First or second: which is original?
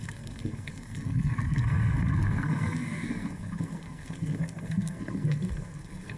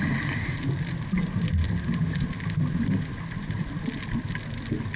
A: second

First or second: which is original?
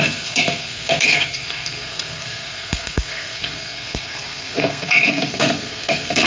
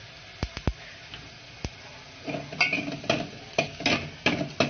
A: second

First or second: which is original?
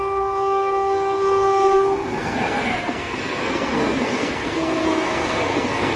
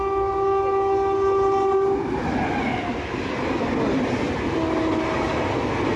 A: second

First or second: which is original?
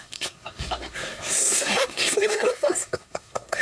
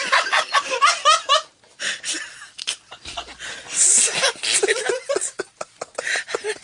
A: second